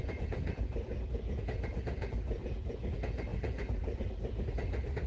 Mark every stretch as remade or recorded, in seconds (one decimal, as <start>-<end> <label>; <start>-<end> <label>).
0.0-5.1 remade